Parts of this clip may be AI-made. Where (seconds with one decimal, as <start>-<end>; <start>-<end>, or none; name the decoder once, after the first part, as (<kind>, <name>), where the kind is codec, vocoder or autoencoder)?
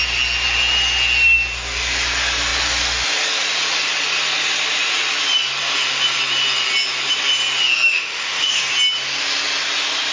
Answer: 7.7-8.7 (autoencoder, DAC-VAE)